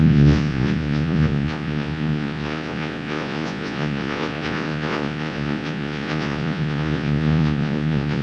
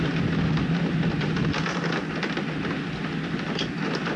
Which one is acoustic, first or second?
second